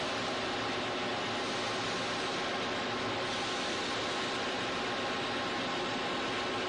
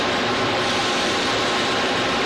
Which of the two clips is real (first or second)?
first